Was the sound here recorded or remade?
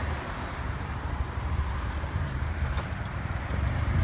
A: remade